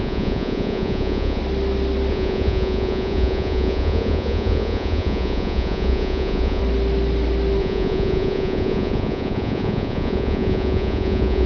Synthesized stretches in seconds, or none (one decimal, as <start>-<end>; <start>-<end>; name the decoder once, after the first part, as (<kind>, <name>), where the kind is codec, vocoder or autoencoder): 0.0-1.4 (vocoder, Vocos); 2.1-6.6; 7.6-11.5